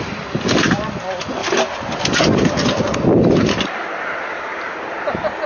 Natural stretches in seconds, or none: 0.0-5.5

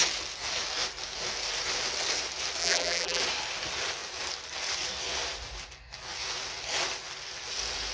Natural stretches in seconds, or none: 0.0-2.6; 3.2-7.9